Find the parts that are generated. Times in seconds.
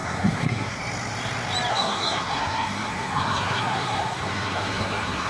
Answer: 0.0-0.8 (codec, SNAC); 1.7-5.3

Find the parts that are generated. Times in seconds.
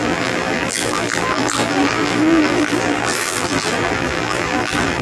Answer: 0.0-5.0 (vocoder, BigVGAN v2)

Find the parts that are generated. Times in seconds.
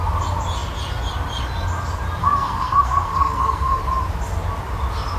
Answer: 2.2-3.8 (codec, SNAC)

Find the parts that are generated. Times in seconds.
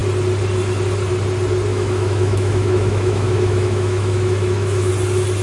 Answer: 1.7-4.9 (autoencoder, DAC-VAE)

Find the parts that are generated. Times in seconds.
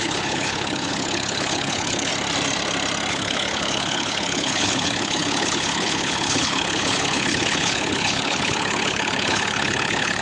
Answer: 0.0-2.1 (codec, HILCodec); 3.1-10.2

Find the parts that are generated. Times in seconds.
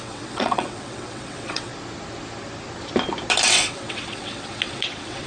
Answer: 0.0-1.7 (vocoder, WaveNeXt); 3.5-5.3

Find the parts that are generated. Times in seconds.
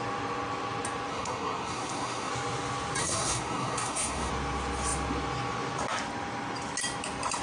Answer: 1.1-2.3 (codec, SNAC); 3.0-4.3